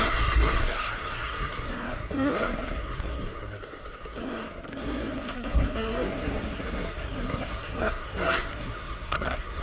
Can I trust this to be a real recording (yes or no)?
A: no